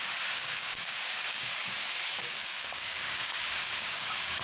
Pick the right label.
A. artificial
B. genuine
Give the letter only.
A